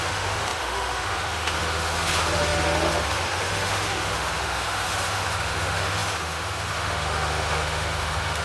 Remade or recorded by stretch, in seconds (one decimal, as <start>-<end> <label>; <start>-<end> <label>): 0.0-8.4 remade